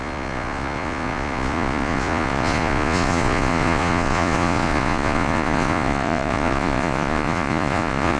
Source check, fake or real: fake